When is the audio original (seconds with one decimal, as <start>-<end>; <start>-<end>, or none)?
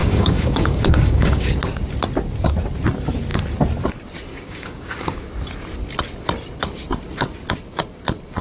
1.6-4.3; 5.2-8.4